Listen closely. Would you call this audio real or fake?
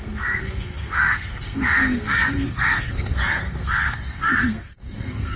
fake